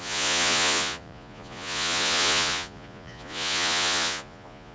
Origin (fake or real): fake